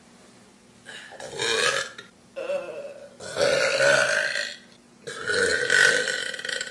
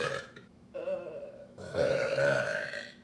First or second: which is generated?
second